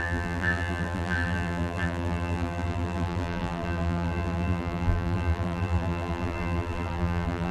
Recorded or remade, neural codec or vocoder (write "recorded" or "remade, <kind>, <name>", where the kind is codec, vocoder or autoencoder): remade, vocoder, BigVGAN v2